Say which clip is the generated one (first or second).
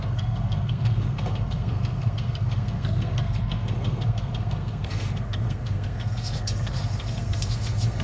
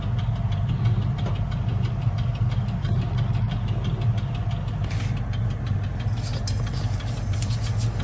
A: first